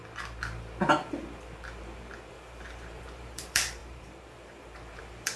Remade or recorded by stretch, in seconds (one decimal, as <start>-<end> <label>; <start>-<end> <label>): 0.0-2.3 recorded; 2.3-5.4 remade